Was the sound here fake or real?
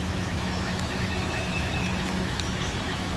fake